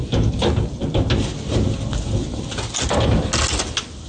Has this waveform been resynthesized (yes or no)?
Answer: no